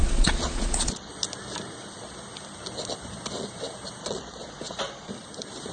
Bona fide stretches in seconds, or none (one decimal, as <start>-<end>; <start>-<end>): 1.1-4.0; 5.1-5.7